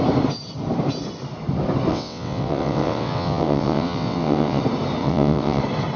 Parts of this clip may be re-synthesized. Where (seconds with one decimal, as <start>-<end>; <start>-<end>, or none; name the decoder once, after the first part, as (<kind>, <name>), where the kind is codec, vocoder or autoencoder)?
1.9-4.6 (vocoder, WaveNeXt); 5.0-5.6